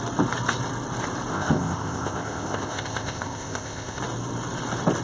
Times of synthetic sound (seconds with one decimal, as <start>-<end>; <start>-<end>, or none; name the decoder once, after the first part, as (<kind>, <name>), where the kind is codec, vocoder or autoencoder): 1.3-4.0 (codec, ZipCodec)

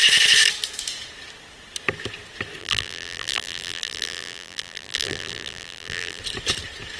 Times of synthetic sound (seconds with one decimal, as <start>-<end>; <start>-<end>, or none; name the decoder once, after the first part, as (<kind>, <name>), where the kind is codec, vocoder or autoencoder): 2.6-6.2 (vocoder, BigVGAN v2)

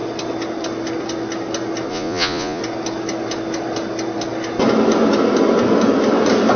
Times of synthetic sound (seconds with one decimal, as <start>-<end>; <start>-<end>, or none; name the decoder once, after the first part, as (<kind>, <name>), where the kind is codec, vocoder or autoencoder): 1.9-2.6 (vocoder, Vocos)

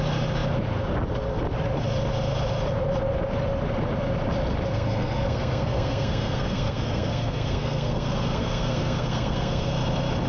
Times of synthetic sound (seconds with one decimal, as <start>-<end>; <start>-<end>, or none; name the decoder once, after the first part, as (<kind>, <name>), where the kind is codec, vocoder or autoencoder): 4.7-9.7 (codec, SNAC)

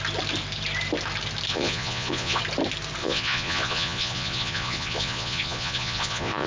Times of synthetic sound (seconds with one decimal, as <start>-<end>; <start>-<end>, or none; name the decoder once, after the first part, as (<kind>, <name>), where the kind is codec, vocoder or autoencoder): 1.5-2.4 (vocoder, Vocos); 3.0-6.5

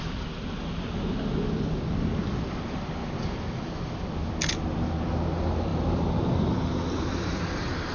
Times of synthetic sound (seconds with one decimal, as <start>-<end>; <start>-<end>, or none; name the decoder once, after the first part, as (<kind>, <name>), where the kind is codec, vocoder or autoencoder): none

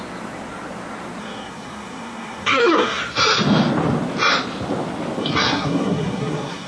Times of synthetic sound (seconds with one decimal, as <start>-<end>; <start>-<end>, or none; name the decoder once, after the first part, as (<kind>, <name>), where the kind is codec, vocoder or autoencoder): 1.2-3.0 (codec, SNAC); 5.2-6.7